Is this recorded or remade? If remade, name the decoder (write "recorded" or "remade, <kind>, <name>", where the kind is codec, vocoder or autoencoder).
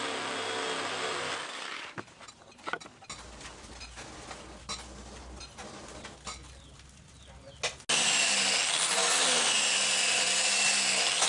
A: recorded